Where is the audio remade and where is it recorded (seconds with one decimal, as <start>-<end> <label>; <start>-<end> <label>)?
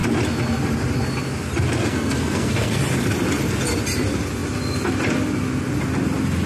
0.0-1.8 recorded; 1.8-2.8 remade; 2.8-6.5 recorded